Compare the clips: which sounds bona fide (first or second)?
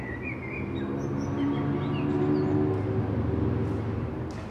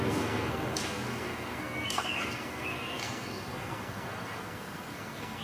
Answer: first